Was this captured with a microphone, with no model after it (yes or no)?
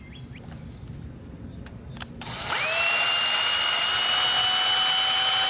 yes